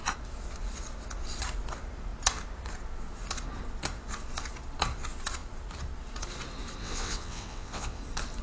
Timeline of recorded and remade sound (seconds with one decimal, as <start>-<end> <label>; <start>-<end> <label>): 0.0-6.8 recorded; 6.8-8.0 remade; 8.0-8.4 recorded